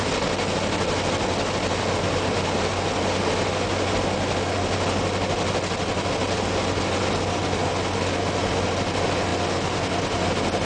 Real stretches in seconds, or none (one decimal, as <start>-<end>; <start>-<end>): 0.0-10.6

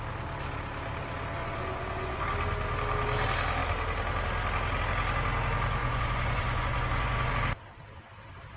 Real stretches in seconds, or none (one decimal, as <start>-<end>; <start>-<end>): 0.0-1.4; 2.2-5.8; 7.3-8.6

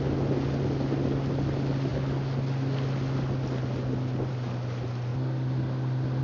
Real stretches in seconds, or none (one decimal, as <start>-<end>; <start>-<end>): 0.0-6.2